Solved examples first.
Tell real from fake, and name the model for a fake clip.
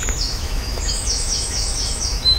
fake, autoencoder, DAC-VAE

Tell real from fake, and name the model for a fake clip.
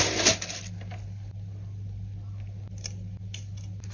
real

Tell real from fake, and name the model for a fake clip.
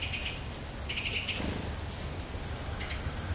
real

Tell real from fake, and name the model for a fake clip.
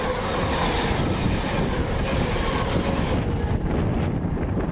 real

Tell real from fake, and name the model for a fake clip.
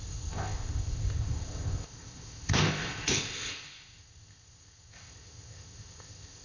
fake, codec, ZipCodec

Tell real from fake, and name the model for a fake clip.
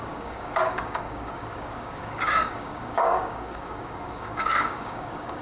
fake, codec, DAC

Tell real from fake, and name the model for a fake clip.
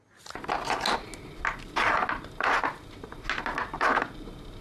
real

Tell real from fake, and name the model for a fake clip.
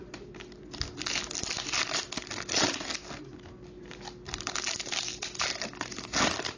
real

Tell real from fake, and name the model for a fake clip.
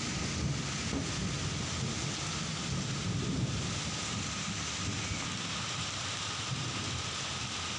real